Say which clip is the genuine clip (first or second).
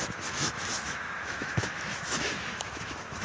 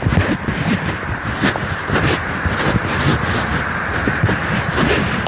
second